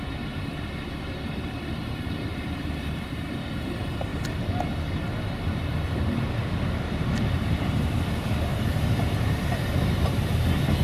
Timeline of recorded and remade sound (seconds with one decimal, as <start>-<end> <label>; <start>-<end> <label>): 0.0-4.1 remade; 4.1-5.2 recorded; 5.2-10.8 remade